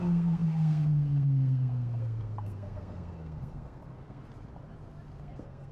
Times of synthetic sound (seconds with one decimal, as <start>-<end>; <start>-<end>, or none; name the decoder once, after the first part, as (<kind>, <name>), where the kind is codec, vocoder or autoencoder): 0.0-4.2 (codec, SNAC); 5.2-5.7